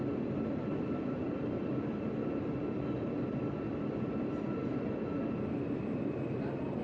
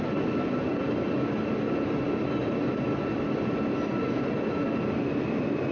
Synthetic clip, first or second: first